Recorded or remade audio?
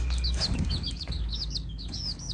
remade